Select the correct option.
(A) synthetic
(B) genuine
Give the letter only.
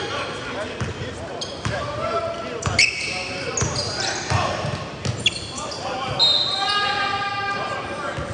B